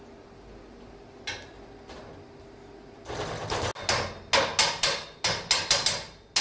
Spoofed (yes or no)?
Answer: no